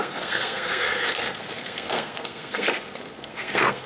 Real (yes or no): no